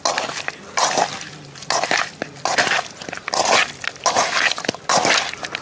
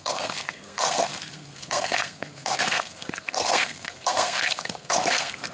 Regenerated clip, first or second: second